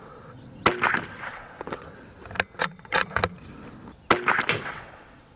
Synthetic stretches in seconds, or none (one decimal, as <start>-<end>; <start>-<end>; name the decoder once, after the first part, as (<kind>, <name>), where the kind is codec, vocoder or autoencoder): 0.0-0.6 (vocoder, WaveNeXt); 1.3-1.9; 2.6-3.2; 4.6-5.4